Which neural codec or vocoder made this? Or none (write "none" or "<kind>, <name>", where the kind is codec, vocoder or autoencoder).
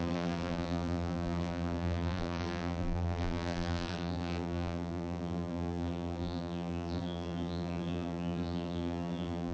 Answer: vocoder, BigVGAN v2